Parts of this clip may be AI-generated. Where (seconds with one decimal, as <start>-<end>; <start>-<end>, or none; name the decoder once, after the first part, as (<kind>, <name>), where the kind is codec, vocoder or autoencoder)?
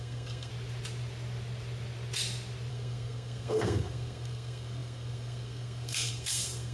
0.0-0.5 (codec, SNAC); 2.7-6.7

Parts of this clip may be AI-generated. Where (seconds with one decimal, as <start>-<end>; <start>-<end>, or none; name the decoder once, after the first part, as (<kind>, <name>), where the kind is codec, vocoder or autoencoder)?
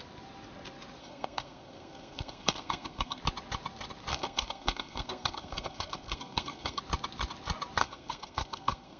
1.0-3.2 (codec, SNAC); 4.1-6.8; 7.8-9.0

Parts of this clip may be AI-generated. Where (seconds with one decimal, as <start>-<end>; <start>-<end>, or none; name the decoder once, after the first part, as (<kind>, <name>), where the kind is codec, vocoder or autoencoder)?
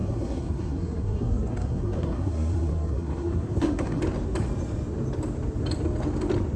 0.0-4.0 (codec, SNAC)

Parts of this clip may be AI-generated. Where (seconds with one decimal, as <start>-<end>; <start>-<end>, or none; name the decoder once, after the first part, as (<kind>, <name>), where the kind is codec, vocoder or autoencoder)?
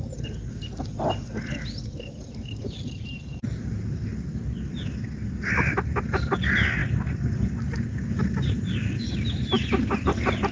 none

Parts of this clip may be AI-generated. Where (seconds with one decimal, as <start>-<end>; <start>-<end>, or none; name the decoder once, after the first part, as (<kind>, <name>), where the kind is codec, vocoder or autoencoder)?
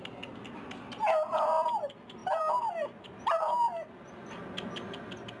none